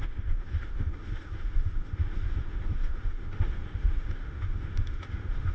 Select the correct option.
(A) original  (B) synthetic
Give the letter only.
B